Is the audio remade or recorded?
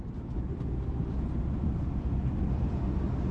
recorded